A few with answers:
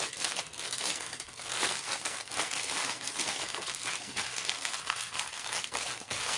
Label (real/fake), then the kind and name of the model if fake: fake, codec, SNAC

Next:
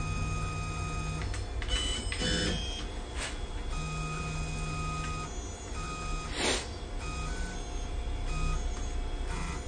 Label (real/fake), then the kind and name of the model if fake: real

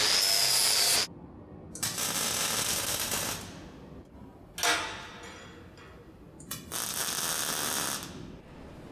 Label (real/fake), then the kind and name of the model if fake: real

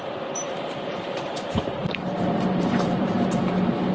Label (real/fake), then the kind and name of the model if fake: fake, vocoder, BigVGAN v2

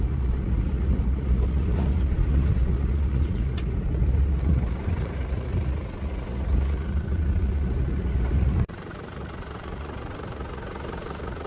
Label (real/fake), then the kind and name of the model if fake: fake, vocoder, Vocos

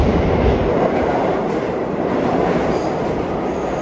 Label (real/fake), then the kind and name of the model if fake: fake, vocoder, BigVGAN v2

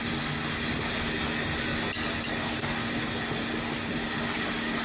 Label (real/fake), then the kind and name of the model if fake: real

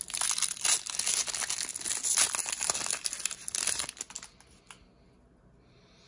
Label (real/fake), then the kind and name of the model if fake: real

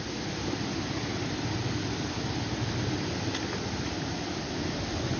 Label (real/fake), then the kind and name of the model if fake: real